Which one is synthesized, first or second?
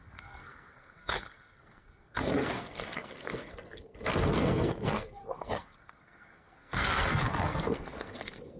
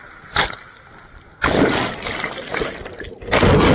first